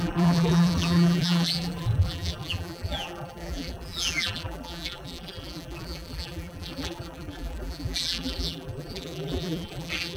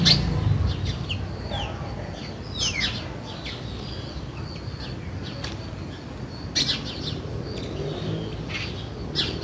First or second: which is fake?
first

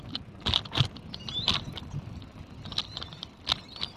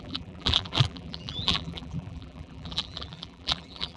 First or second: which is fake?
second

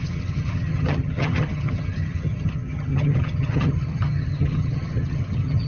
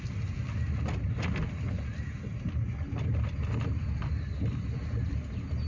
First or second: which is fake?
first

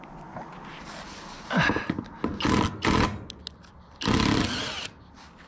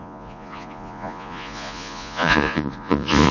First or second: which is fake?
second